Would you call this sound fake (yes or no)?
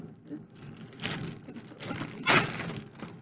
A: no